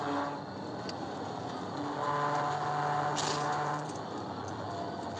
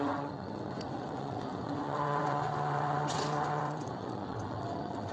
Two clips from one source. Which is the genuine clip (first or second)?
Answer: first